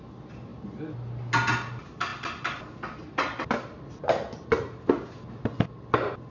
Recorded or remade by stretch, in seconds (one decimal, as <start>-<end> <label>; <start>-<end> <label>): 0.0-6.3 recorded